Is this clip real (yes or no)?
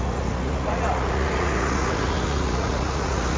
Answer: no